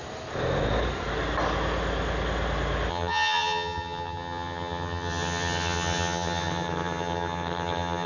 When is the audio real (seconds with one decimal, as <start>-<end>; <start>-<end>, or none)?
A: 0.0-2.9